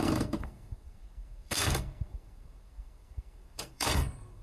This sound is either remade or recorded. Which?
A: remade